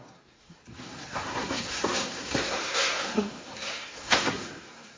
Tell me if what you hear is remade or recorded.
remade